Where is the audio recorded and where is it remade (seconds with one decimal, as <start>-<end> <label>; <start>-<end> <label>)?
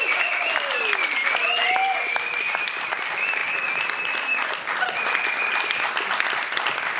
0.0-7.0 recorded